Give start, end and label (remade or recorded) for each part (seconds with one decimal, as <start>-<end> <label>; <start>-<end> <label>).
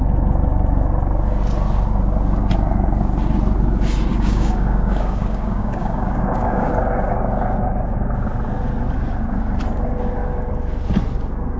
0.0-4.1 recorded; 4.1-6.7 remade; 6.7-11.6 recorded